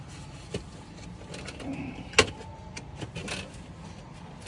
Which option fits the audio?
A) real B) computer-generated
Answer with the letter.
A